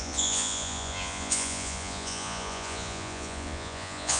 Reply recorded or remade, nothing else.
remade